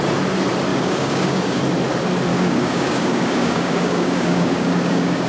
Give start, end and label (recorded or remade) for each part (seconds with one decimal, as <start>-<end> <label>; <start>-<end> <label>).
0.0-0.7 recorded; 0.7-1.6 remade; 1.6-2.3 recorded; 2.3-5.3 remade